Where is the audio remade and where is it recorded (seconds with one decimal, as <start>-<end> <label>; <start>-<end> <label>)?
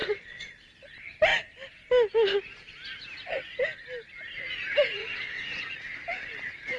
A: 0.0-0.5 remade; 0.5-5.0 recorded; 5.0-5.6 remade; 5.6-6.8 recorded